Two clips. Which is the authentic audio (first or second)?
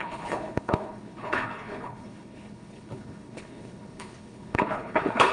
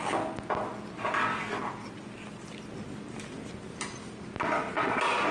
second